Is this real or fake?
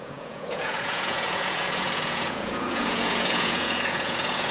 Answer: fake